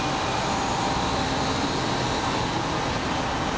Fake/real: real